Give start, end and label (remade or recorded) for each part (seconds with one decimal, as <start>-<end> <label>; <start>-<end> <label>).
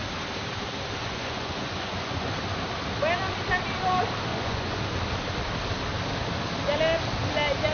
0.0-1.0 recorded; 1.0-2.3 remade; 2.3-4.3 recorded; 4.3-4.8 remade; 4.8-7.7 recorded